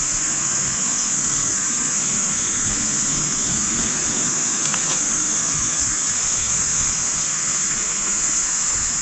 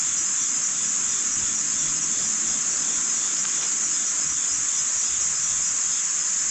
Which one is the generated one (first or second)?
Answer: first